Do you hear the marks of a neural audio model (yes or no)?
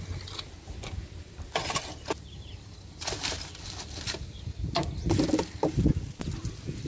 no